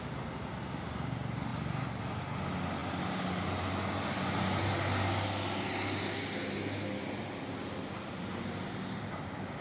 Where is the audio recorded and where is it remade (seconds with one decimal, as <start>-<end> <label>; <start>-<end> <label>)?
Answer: 0.0-9.6 recorded